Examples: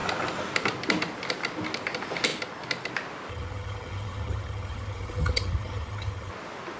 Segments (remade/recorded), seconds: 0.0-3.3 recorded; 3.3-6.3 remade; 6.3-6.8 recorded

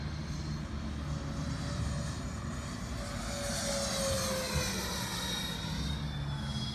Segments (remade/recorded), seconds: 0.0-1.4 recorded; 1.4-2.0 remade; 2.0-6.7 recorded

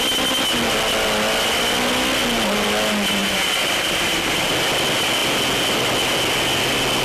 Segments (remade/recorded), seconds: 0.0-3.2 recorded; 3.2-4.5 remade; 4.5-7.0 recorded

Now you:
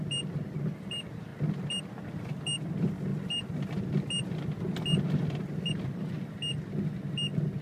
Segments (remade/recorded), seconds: 0.0-7.6 recorded

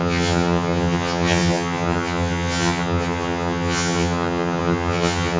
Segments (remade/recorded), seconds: 0.0-5.4 remade

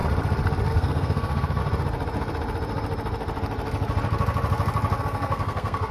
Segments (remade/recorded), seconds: 0.0-0.7 recorded; 0.7-1.6 remade; 1.6-5.0 recorded; 5.0-5.9 remade

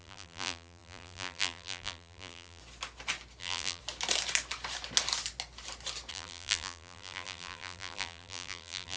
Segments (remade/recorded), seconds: 0.0-2.6 remade; 2.6-3.4 recorded; 3.4-3.8 remade; 3.8-6.1 recorded; 6.1-9.0 remade